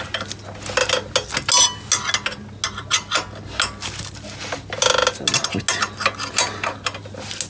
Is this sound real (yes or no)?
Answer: yes